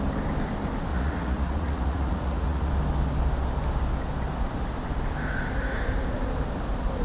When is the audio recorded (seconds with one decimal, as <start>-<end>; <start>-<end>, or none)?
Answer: 0.0-0.9; 2.7-7.0

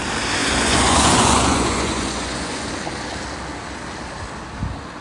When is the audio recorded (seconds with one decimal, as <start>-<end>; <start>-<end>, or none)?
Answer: 0.0-0.4; 2.7-5.0

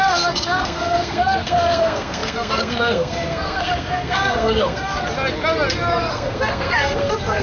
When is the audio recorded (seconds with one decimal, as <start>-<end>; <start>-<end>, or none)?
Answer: 5.0-6.1

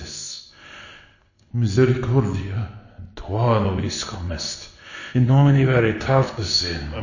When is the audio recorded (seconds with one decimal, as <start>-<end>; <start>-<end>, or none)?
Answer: 1.5-3.8; 6.6-7.0

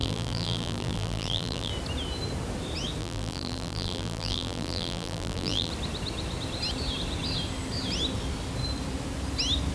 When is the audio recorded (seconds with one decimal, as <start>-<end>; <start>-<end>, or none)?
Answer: 1.7-3.0; 5.7-9.7

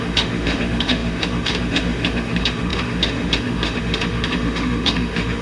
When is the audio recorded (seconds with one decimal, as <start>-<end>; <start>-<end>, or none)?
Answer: none

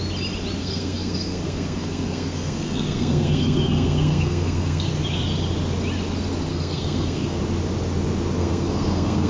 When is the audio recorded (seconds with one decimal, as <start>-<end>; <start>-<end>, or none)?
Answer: 0.0-0.6; 4.9-6.5; 7.4-8.4

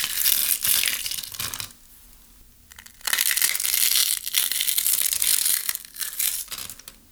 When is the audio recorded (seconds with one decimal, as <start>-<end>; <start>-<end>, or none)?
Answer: 0.0-4.0; 4.6-5.3; 6.2-7.1